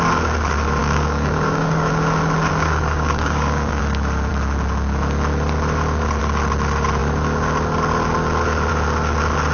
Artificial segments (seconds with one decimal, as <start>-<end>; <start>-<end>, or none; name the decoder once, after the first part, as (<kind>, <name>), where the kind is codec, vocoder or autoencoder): 0.8-1.9 (codec, DAC); 2.5-3.8